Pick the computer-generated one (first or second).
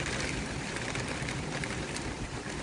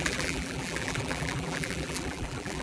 second